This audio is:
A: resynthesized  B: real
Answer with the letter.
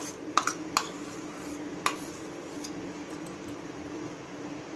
B